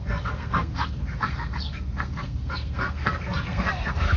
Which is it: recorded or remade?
remade